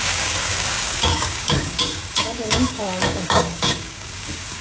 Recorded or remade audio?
remade